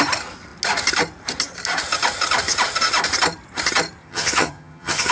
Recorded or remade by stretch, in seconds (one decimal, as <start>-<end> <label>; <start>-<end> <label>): 0.0-4.0 recorded; 4.0-5.1 remade